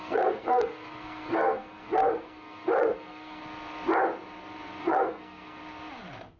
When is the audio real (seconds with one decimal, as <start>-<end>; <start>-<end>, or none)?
3.4-4.8; 5.6-6.4